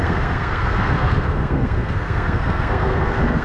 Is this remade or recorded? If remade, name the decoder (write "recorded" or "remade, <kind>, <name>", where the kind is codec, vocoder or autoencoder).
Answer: remade, codec, SNAC